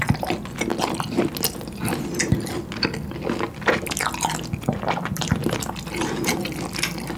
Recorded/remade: recorded